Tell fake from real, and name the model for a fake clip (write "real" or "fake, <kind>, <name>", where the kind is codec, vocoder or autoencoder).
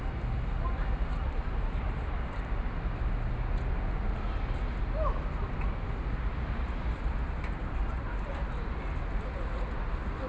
real